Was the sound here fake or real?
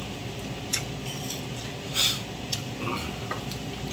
real